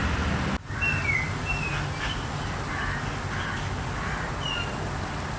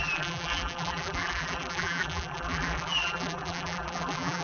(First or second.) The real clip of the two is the first